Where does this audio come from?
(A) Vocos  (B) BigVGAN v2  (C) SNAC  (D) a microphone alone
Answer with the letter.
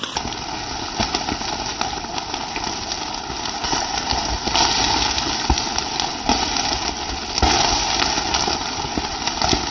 D